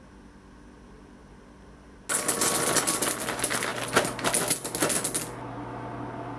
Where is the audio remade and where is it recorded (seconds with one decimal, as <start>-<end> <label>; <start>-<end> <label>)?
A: 0.0-6.4 recorded